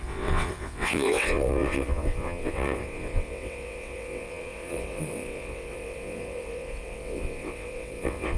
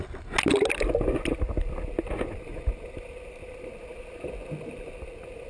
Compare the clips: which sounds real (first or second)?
second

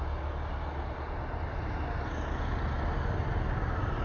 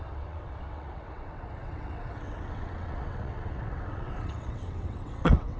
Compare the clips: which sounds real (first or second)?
first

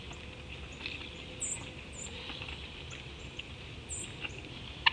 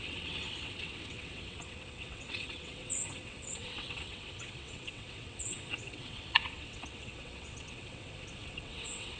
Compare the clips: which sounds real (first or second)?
first